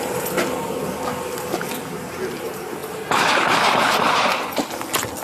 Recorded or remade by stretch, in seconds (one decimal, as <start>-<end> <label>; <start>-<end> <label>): 0.0-5.2 recorded